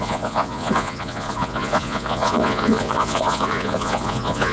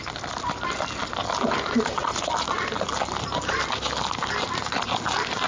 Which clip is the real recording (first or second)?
second